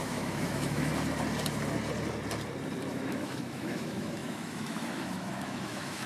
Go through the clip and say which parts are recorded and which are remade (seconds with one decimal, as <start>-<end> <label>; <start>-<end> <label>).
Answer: 0.0-0.9 remade; 0.9-2.9 recorded; 2.9-6.1 remade